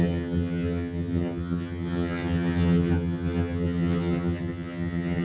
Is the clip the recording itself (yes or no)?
no